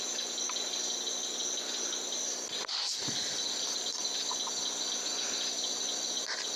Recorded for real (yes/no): yes